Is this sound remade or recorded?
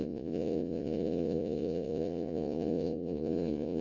remade